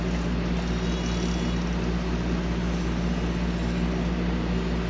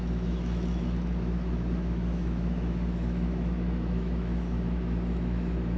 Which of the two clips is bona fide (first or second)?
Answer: first